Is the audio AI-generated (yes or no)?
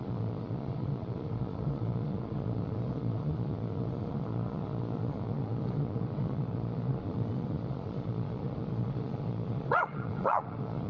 yes